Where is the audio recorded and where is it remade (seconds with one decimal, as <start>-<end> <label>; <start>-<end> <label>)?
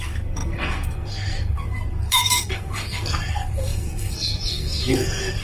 0.0-5.4 remade